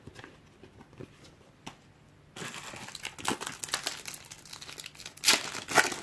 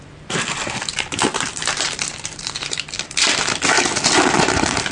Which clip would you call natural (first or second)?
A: first